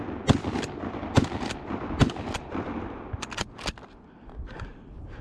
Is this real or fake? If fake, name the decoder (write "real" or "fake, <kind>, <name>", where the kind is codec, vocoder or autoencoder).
real